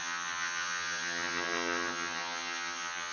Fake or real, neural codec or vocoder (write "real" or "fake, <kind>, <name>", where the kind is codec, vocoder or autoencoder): fake, vocoder, HiFi-GAN